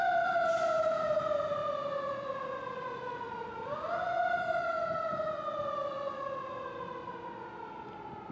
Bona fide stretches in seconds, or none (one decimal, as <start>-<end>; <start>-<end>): 0.0-8.3